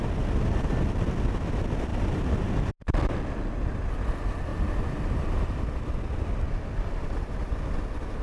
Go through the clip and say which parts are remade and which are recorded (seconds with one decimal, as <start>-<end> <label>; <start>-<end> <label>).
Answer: 0.0-1.9 recorded; 1.9-2.7 remade; 2.7-4.5 recorded; 4.5-5.5 remade; 5.5-8.2 recorded